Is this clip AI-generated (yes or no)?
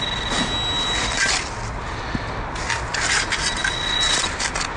no